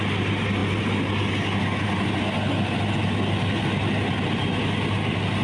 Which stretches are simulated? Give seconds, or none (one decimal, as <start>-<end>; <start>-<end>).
none